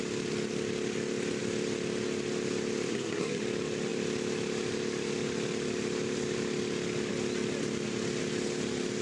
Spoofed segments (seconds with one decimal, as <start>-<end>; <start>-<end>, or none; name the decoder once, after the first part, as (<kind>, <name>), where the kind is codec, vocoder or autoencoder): 2.9-3.4 (codec, SNAC)